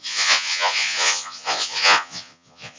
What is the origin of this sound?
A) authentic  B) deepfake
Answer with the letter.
B